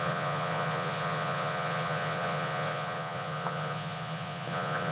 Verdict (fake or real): fake